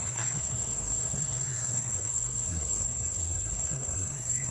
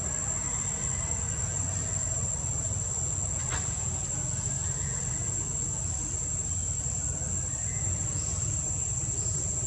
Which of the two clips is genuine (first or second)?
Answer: second